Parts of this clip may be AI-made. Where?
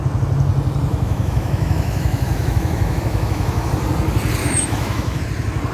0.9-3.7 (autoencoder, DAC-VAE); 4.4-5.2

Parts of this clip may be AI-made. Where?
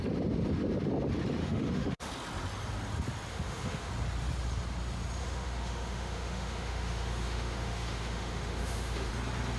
1.4-2.1 (autoencoder, DAC-VAE); 3.3-3.9; 5.2-9.1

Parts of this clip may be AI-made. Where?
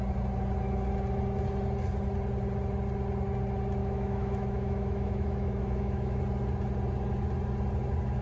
3.8-6.2 (autoencoder, DAC-VAE)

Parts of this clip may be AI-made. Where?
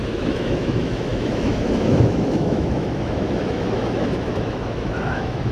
0.0-5.5 (autoencoder, DAC-VAE)